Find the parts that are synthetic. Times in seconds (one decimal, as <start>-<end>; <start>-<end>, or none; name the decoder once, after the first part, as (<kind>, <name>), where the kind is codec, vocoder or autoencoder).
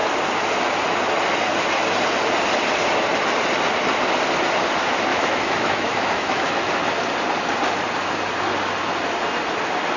5.1-6.6 (autoencoder, DAC-VAE)